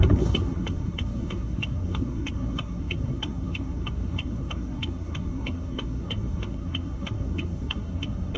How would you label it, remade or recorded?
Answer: remade